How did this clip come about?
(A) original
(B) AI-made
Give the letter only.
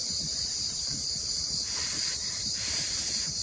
B